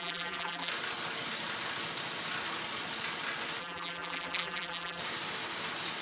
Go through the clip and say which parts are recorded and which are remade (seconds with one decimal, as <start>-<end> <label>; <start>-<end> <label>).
0.0-0.7 remade; 0.7-3.6 recorded; 3.6-5.0 remade; 5.0-6.0 recorded